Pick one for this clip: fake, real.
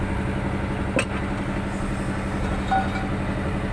real